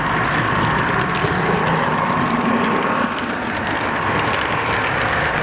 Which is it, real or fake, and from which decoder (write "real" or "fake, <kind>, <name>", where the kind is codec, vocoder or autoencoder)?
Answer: real